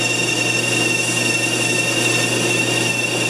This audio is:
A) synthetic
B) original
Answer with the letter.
B